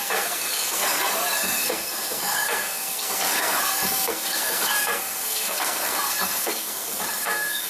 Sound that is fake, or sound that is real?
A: fake